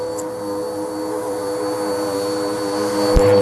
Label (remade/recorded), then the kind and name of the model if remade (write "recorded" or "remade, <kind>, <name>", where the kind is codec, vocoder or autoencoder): recorded